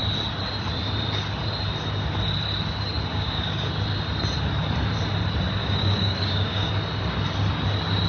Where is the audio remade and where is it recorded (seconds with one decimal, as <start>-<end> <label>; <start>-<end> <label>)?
0.0-3.1 recorded; 3.1-3.7 remade; 3.7-5.6 recorded; 5.6-6.7 remade; 6.7-8.1 recorded